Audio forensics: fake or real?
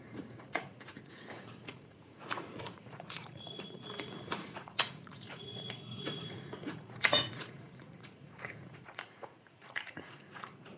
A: fake